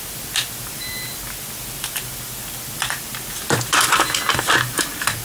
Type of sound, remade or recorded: remade